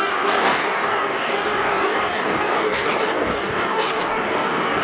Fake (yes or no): yes